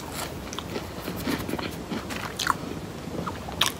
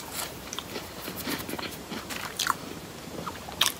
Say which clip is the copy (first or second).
second